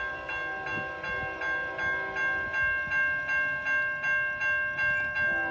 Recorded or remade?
recorded